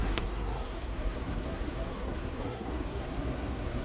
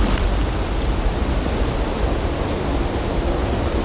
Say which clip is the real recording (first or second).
second